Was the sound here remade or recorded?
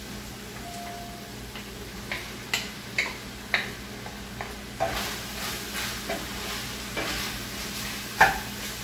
recorded